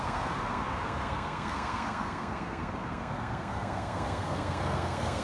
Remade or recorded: remade